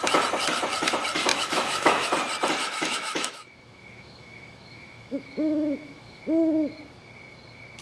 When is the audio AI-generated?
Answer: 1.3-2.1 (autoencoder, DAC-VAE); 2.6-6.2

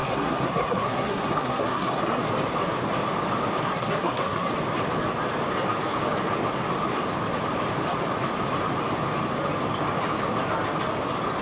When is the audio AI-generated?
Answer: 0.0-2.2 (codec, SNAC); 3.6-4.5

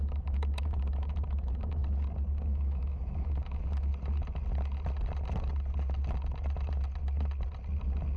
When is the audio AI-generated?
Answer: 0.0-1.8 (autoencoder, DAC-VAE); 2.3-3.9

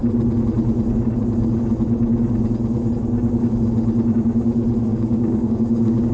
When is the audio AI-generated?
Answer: 4.9-6.1 (codec, DAC)

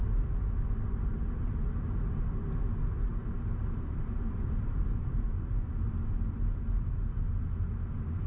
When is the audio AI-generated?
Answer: 3.1-4.8 (vocoder, BigVGAN v2)

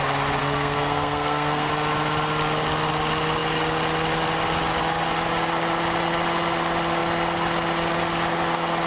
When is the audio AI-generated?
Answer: 0.4-1.7 (codec, SNAC)

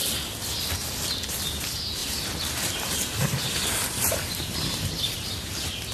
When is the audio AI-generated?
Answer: 2.0-5.5 (vocoder, BigVGAN v2)

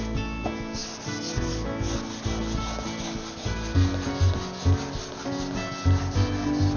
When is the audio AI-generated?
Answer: none